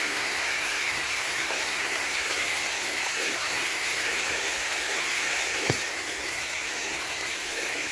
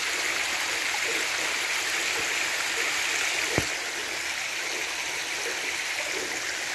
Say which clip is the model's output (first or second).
first